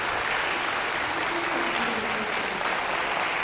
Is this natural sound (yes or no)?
yes